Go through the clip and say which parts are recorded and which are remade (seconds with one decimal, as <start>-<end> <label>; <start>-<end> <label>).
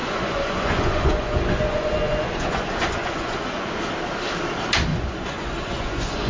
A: 0.0-3.8 remade; 3.8-4.9 recorded; 4.9-6.3 remade